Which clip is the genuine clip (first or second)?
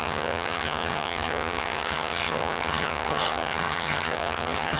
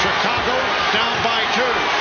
second